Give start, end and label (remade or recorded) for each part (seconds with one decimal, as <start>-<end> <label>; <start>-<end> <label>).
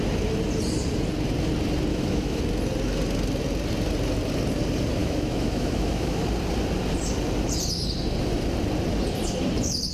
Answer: 0.0-1.9 recorded; 1.9-2.4 remade; 2.4-5.0 recorded; 5.0-6.2 remade; 6.2-9.9 recorded